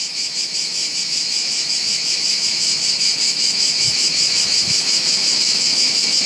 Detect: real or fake fake